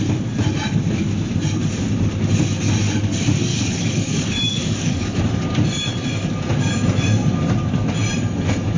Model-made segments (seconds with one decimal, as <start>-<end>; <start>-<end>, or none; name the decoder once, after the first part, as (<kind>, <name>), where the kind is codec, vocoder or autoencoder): 3.5-5.2 (codec, DAC)